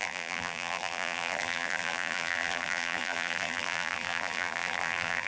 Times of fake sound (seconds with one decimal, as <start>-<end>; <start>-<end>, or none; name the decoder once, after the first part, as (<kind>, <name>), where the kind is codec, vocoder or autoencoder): 0.0-5.3 (vocoder, BigVGAN v2)